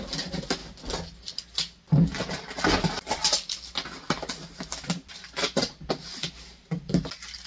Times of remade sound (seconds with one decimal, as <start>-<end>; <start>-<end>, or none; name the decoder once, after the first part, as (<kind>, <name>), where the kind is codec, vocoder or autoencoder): none